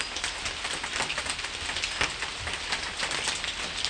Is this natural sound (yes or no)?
yes